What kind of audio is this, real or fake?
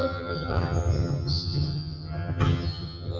fake